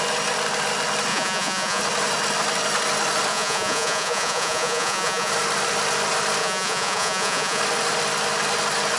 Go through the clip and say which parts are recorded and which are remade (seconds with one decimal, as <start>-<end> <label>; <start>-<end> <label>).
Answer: 0.0-1.1 recorded; 1.1-1.8 remade; 1.8-3.3 recorded; 3.3-5.3 remade; 5.3-6.4 recorded; 6.4-7.6 remade; 7.6-9.0 recorded